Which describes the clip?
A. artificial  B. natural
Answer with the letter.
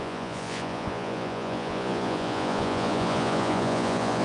A